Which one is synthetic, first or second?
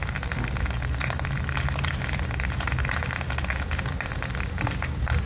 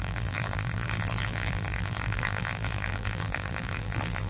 second